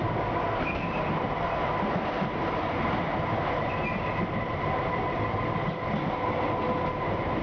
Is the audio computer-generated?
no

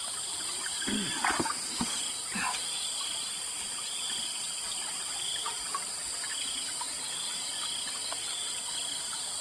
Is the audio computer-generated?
no